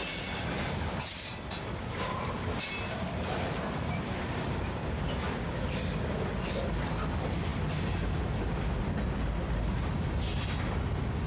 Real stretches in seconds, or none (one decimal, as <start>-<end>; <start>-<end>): 0.0-11.3